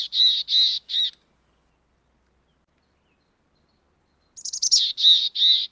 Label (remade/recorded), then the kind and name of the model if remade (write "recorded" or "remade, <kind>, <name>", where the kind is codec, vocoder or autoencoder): recorded